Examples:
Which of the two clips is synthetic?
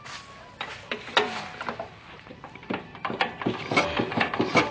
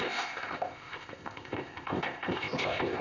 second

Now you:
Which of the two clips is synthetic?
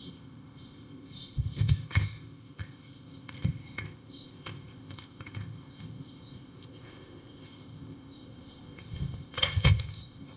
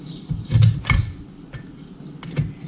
first